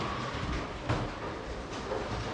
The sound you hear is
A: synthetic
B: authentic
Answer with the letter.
B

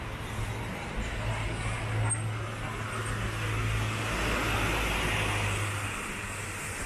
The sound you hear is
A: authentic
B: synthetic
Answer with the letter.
A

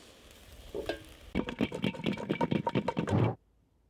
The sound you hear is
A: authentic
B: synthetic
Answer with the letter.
A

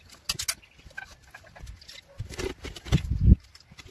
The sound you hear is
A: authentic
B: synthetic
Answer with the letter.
A